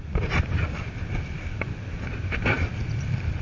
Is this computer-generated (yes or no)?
no